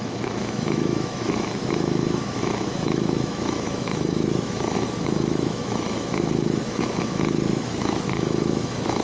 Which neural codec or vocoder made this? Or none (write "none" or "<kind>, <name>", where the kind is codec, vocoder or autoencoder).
autoencoder, DAC-VAE